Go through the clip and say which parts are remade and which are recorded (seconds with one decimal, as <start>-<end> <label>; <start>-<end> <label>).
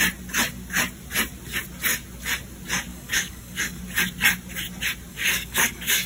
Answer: 0.0-2.9 recorded; 2.9-3.8 remade; 3.8-5.1 recorded; 5.1-6.1 remade